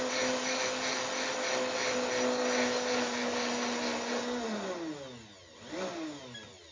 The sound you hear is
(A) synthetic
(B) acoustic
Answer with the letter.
B